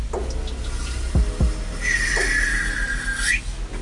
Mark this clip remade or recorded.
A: recorded